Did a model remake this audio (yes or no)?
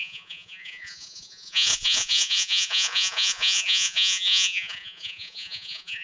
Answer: yes